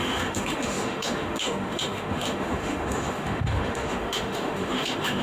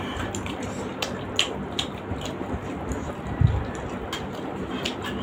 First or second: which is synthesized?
first